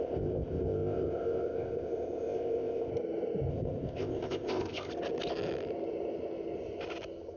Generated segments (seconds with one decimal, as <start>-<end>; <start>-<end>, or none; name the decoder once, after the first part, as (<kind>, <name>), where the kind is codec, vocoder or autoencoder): 0.0-2.9 (codec, ZipCodec); 3.5-4.9